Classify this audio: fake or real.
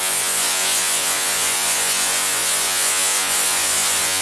fake